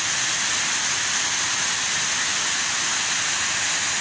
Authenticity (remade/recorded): recorded